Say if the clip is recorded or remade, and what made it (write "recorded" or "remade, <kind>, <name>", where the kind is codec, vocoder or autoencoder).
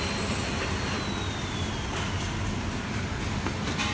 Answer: recorded